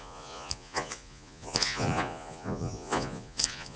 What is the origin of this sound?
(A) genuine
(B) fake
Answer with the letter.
B